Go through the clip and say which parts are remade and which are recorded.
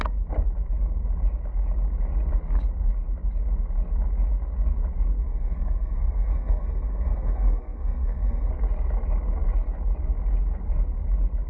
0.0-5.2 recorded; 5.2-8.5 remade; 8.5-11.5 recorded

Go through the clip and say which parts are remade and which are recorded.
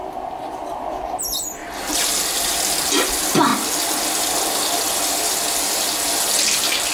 0.0-1.6 recorded; 1.6-2.1 remade; 2.1-6.9 recorded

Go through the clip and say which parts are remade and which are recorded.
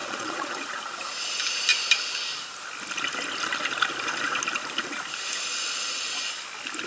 0.0-0.8 remade; 0.8-6.9 recorded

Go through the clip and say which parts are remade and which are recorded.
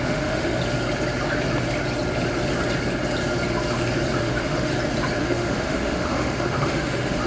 0.0-0.6 remade; 0.6-4.2 recorded; 4.2-4.7 remade; 4.7-5.2 recorded; 5.2-7.3 remade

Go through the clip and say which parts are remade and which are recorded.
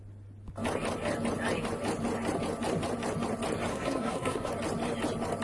0.0-3.7 recorded; 3.7-4.5 remade; 4.5-5.4 recorded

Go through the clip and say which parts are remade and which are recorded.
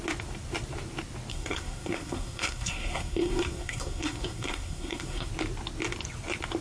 0.0-1.3 recorded; 1.3-5.3 remade; 5.3-6.6 recorded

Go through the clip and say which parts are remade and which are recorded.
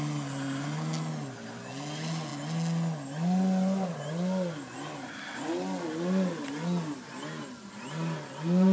0.0-8.7 recorded